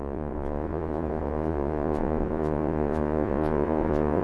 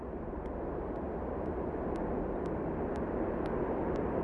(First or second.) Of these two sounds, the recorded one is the second